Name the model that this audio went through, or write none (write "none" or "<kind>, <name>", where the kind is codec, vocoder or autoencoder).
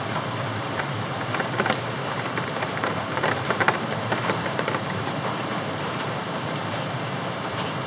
vocoder, BigVGAN v2